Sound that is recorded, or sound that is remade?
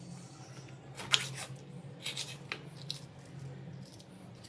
recorded